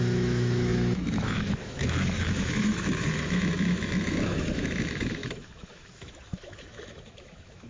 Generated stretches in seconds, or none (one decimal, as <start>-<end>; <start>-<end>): 0.0-7.7